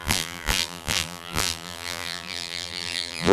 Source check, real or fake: fake